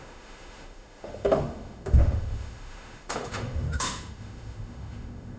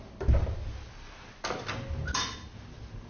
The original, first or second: second